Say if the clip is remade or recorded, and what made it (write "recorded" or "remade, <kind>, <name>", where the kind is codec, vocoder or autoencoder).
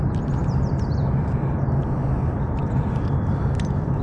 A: recorded